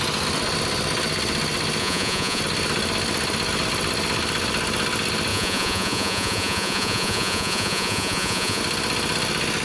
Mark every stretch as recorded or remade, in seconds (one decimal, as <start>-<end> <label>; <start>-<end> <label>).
0.0-1.8 recorded; 1.8-2.4 remade; 2.4-5.3 recorded; 5.3-8.6 remade; 8.6-9.6 recorded